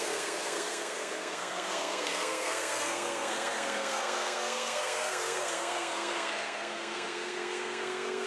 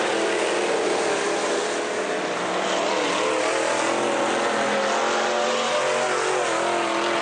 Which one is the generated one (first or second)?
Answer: first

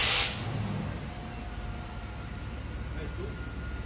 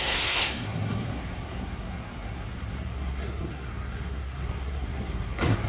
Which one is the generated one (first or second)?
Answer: second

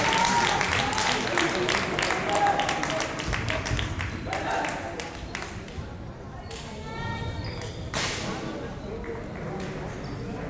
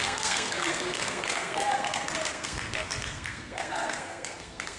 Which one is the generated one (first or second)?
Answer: second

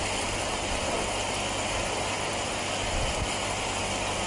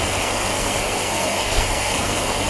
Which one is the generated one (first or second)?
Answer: second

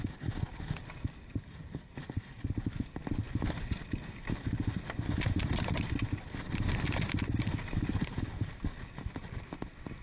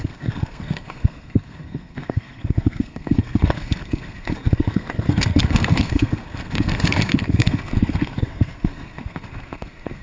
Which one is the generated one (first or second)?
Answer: second